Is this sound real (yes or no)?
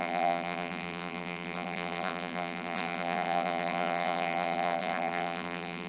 no